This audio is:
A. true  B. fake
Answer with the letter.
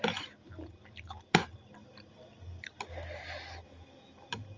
A